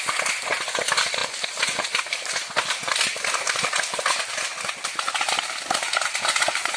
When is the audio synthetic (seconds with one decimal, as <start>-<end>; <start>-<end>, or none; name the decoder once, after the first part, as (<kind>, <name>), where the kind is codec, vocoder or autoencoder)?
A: none